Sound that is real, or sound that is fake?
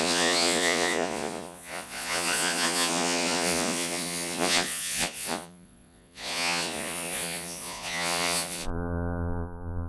fake